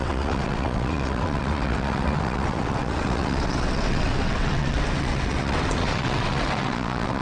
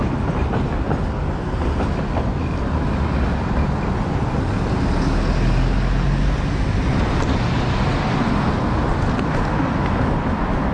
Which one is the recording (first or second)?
second